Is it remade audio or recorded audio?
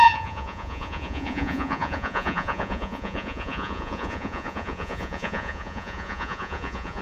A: remade